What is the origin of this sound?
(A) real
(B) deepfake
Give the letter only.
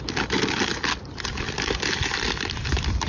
A